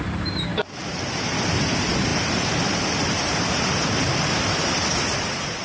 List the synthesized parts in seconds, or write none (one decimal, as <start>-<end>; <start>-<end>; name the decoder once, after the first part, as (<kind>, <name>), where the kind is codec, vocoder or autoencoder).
0.0-0.5 (vocoder, BigVGAN v2); 1.1-5.6